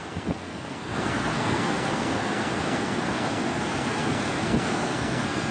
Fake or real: fake